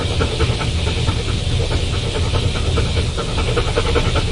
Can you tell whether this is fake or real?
real